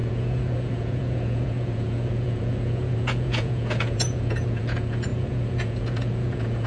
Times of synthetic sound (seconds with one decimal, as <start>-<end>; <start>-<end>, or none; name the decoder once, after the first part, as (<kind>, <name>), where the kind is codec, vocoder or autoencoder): 0.0-6.7 (vocoder, Vocos)